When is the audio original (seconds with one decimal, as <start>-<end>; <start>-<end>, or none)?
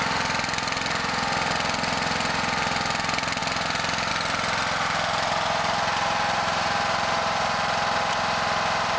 0.0-9.0